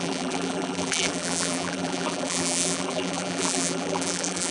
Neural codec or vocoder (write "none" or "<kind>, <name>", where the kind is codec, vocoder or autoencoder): vocoder, BigVGAN v2